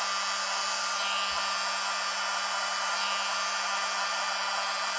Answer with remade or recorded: recorded